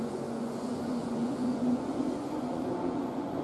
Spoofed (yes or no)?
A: yes